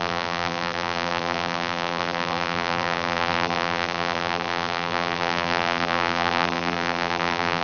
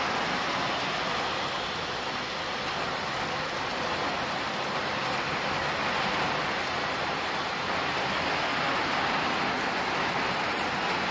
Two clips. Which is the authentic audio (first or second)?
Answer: second